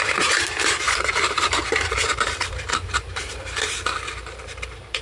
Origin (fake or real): fake